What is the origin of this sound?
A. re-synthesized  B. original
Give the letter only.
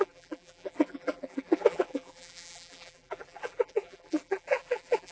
A